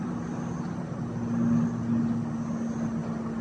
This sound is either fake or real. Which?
real